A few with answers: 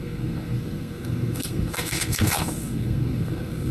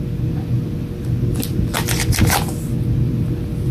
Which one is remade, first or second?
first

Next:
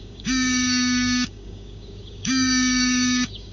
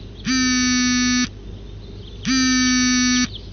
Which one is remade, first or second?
first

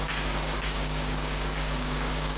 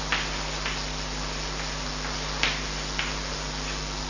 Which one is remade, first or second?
first